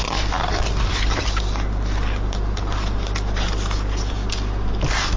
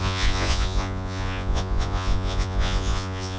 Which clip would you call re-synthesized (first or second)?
second